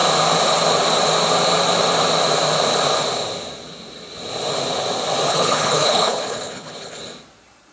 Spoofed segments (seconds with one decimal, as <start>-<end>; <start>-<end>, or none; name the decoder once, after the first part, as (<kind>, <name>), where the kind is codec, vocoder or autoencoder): 5.3-7.0 (codec, HILCodec)